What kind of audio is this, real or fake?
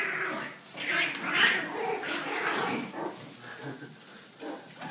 real